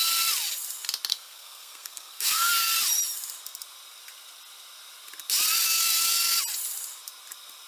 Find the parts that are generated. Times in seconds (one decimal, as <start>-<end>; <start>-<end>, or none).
1.1-2.5